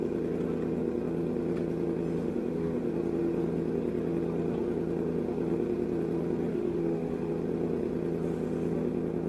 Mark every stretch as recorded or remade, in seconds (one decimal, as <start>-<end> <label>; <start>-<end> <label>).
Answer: 0.0-2.3 recorded; 2.3-2.9 remade; 2.9-6.5 recorded; 6.5-7.3 remade; 7.3-9.3 recorded